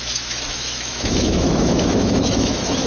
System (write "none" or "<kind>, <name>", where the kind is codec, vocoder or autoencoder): autoencoder, DAC-VAE